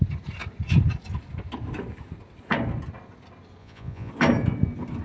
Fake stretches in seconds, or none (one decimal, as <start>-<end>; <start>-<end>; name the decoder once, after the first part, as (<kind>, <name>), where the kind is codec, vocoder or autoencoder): 3.6-4.1 (vocoder, Vocos)